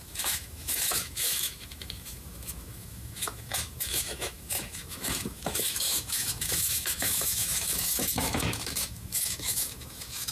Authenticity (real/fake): fake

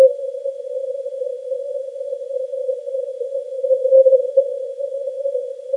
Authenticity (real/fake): real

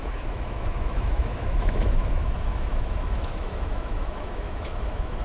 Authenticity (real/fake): fake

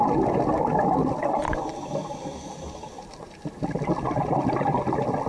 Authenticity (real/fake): real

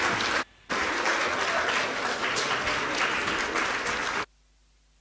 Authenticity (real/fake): real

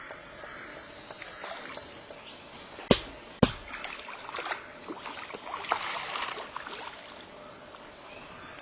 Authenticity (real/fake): real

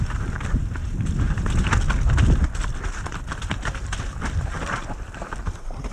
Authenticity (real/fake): real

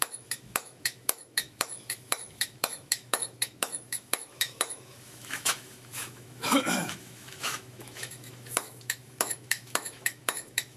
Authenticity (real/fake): fake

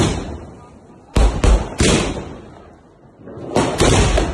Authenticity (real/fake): real